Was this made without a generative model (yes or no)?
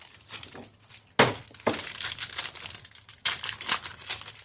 yes